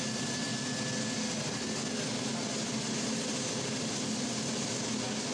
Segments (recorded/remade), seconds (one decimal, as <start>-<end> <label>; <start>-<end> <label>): 0.0-5.3 recorded